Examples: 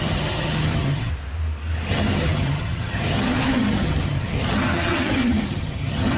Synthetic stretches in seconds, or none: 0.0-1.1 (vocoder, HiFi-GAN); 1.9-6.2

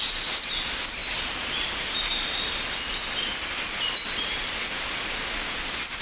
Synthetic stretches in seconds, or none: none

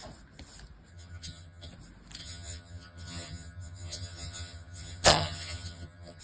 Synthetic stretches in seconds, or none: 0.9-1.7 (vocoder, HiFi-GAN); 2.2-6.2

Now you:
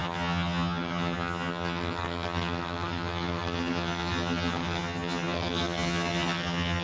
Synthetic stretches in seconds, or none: 0.0-6.8 (vocoder, HiFi-GAN)